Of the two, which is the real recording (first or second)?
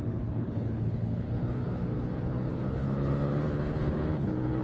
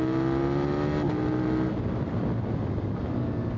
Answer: second